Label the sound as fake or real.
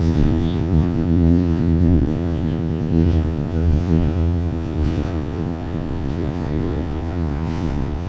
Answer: fake